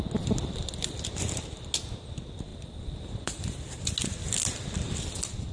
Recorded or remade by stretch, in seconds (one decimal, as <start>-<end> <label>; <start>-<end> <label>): 0.0-2.5 recorded; 2.5-3.8 remade; 3.8-5.5 recorded